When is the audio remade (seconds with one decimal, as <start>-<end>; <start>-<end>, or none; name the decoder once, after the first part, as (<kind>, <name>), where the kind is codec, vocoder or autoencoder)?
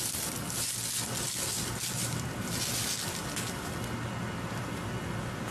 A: 1.9-2.7 (vocoder, BigVGAN v2)